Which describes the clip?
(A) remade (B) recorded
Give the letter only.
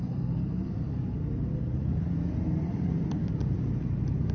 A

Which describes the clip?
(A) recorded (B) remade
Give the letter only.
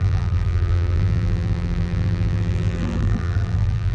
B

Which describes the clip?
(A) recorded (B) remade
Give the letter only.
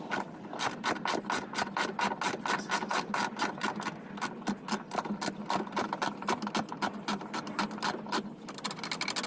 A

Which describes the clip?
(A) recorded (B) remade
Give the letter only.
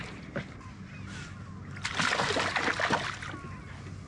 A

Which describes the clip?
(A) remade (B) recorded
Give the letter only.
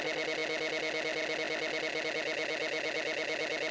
B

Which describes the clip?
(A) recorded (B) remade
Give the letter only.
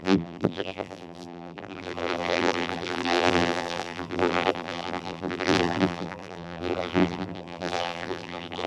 B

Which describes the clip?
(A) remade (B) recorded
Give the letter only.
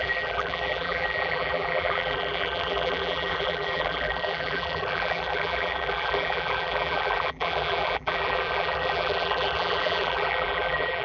A